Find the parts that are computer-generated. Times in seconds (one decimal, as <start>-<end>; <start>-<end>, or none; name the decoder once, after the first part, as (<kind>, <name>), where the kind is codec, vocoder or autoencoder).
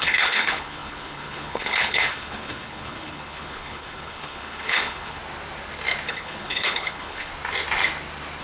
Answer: 0.0-5.2 (codec, HILCodec); 6.1-7.3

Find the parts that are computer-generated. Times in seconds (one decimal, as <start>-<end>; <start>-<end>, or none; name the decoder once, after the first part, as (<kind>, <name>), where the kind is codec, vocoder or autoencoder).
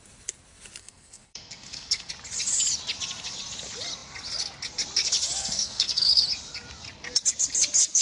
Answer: 0.8-2.1 (codec, SNAC); 5.4-6.2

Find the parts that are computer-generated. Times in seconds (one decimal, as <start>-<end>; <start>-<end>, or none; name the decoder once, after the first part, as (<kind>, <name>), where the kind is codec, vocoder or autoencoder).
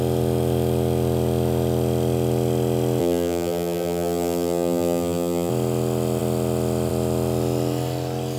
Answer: 3.0-5.5 (vocoder, BigVGAN v2)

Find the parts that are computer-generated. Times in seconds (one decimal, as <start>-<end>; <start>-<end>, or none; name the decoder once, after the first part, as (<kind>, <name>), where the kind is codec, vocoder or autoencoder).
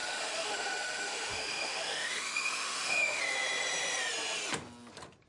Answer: 0.0-3.2 (autoencoder, DAC-VAE)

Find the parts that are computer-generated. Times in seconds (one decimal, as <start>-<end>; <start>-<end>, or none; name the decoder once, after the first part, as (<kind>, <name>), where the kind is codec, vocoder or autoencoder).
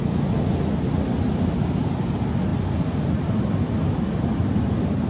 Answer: none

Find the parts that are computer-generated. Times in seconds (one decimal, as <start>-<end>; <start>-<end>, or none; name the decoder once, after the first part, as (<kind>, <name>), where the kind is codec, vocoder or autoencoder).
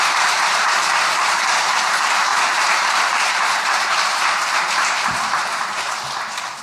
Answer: 0.0-6.6 (vocoder, BigVGAN v2)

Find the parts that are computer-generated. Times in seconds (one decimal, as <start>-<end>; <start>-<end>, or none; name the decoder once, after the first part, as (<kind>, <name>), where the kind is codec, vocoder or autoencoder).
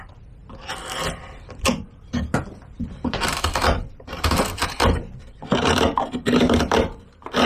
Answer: 0.0-0.4 (vocoder, BigVGAN v2); 2.7-7.5